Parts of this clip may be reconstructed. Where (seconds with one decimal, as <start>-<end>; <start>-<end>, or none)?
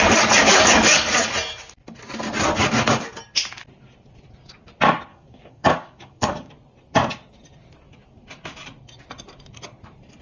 0.4-1.3; 5.1-6.5